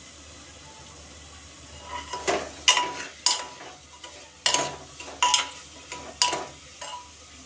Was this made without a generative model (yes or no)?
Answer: yes